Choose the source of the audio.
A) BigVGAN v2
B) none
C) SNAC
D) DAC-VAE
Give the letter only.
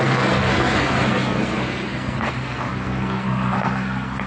C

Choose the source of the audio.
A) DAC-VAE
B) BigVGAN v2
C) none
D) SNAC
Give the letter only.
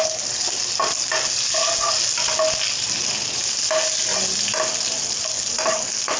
C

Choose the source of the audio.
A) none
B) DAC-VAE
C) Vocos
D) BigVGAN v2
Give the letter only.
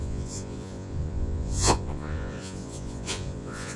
C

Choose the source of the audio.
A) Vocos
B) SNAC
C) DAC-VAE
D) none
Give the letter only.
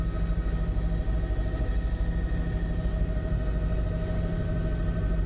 D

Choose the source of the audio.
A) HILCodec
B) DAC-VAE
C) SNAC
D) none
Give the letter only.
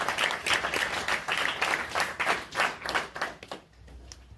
D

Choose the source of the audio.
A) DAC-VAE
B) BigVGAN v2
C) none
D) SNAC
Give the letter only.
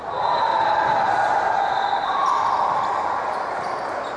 C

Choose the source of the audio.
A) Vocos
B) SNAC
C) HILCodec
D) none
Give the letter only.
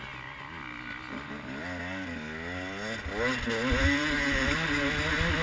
D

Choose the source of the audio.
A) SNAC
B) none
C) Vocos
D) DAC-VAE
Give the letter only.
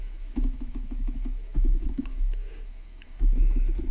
D